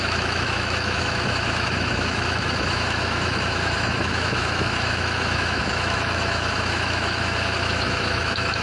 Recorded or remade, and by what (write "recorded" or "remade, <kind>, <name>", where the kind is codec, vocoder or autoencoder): remade, autoencoder, DAC-VAE